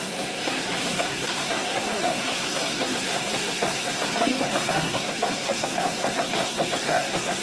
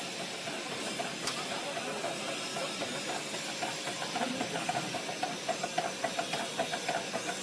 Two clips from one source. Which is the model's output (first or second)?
first